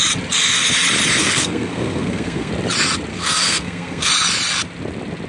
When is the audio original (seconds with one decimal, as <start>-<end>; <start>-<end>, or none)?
0.0-1.2; 2.5-3.1; 4.1-5.3